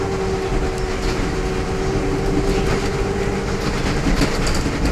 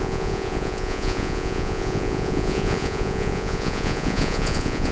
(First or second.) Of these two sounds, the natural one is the first